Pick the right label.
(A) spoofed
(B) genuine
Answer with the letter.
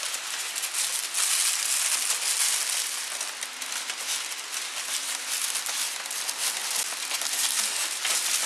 B